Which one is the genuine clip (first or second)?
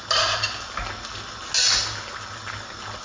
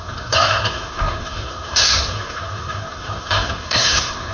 first